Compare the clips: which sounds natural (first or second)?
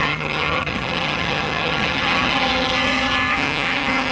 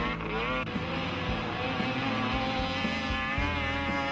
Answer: second